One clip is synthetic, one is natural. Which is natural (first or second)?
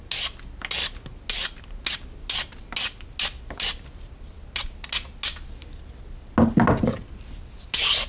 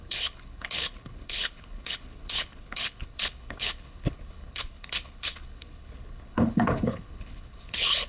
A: first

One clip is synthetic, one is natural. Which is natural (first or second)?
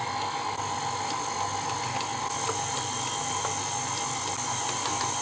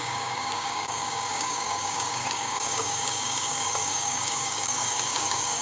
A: first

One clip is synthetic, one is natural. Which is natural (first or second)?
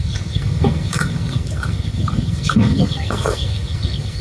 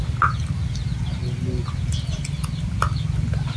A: second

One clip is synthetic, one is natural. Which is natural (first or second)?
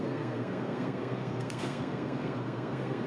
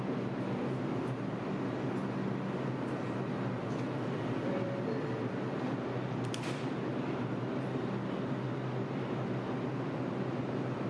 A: second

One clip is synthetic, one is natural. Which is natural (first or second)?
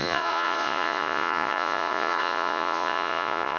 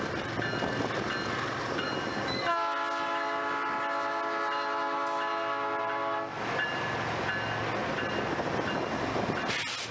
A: second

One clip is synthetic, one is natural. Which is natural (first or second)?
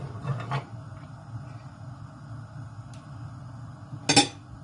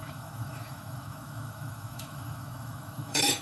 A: first